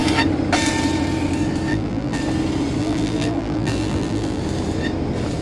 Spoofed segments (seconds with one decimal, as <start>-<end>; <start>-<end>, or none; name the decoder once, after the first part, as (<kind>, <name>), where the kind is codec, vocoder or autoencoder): 1.7-2.2 (vocoder, BigVGAN v2); 2.8-4.4